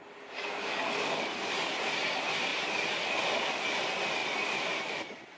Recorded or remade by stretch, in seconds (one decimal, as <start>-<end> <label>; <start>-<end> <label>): 0.0-5.4 recorded